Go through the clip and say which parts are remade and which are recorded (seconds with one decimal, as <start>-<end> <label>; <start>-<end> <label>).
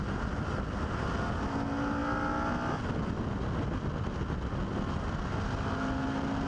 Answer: 0.0-6.5 recorded